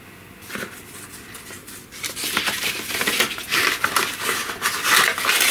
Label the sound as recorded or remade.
recorded